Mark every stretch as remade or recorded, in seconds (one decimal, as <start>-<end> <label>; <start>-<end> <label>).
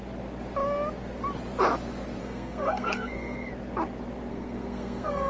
0.0-2.2 recorded; 2.2-3.5 remade; 3.5-4.3 recorded; 4.3-5.3 remade